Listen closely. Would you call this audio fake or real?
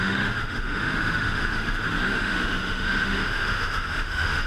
fake